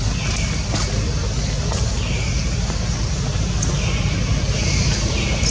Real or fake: real